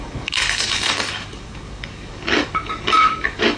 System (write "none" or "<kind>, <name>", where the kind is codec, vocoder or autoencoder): codec, DAC